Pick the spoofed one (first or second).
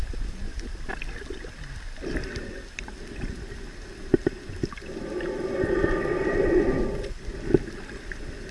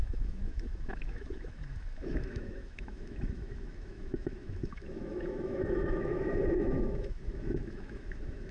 second